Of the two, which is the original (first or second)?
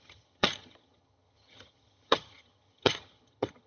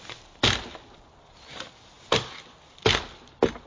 second